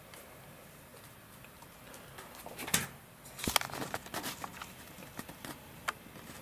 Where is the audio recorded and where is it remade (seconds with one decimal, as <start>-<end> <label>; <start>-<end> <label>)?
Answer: 0.0-6.4 recorded

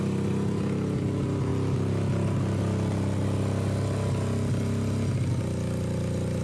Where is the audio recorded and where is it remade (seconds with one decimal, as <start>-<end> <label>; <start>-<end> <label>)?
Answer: 0.0-6.4 recorded

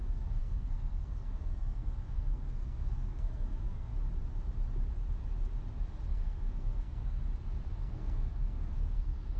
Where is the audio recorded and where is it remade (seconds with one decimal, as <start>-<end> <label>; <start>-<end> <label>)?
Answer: 0.0-3.9 remade; 3.9-6.1 recorded; 6.1-7.2 remade; 7.2-7.8 recorded; 7.8-9.4 remade

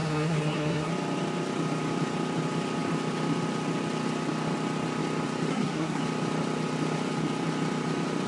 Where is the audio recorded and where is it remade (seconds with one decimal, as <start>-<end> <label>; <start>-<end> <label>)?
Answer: 0.0-0.9 remade; 0.9-5.5 recorded; 5.5-6.0 remade; 6.0-8.3 recorded

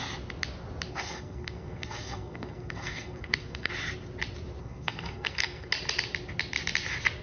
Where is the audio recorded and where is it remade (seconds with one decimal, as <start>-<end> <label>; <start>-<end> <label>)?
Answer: 0.0-0.9 recorded; 0.9-3.7 remade; 3.7-4.6 recorded; 4.6-5.7 remade; 5.7-7.2 recorded

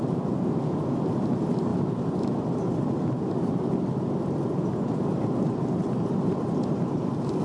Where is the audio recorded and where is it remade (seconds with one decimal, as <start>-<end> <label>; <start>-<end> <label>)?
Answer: 0.0-7.4 recorded